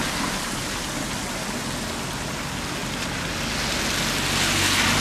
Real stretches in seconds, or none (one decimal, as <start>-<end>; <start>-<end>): 0.0-5.0